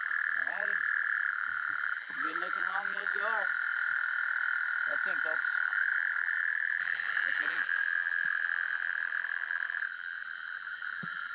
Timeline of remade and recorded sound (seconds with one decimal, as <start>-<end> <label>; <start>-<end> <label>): 0.0-3.2 remade; 3.2-5.4 recorded; 5.4-11.3 remade